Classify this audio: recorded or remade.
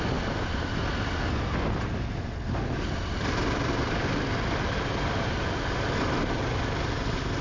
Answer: recorded